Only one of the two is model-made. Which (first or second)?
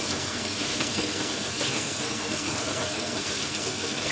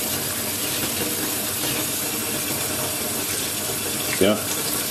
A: first